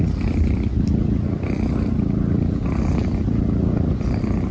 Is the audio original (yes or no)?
yes